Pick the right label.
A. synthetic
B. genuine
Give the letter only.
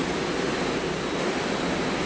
B